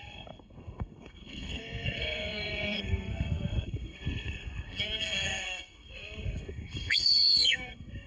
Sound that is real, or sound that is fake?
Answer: fake